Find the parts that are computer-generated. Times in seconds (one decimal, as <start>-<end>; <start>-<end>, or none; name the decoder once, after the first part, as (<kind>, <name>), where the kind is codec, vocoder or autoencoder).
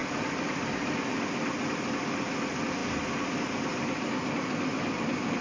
0.0-2.8 (vocoder, BigVGAN v2); 3.4-5.4